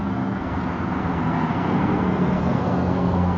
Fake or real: fake